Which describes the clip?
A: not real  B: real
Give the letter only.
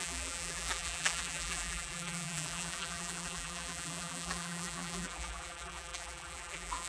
A